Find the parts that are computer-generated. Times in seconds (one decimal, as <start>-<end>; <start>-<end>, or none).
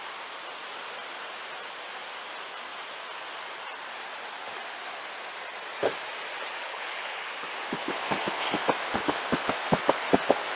6.6-7.2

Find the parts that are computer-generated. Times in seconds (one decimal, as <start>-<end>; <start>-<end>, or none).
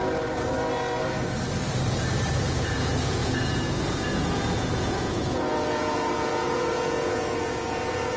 2.4-8.2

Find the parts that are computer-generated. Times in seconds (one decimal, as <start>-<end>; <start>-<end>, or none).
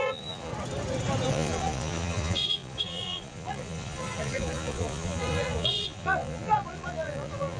0.0-0.5; 1.3-7.6